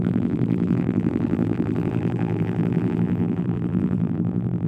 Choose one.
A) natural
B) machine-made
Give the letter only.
B